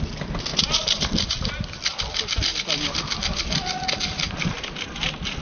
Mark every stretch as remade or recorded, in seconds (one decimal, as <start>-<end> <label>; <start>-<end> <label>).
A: 0.0-0.5 recorded; 0.5-2.0 remade; 2.0-5.4 recorded